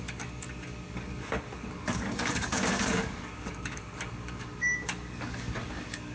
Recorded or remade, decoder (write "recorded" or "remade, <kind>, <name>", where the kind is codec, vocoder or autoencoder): remade, codec, DAC